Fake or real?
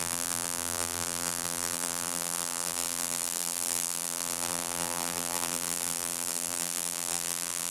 fake